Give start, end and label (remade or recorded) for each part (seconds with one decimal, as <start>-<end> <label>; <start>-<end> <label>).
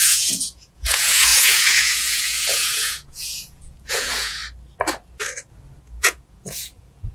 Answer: 0.0-4.4 remade; 4.4-5.8 recorded; 5.8-7.1 remade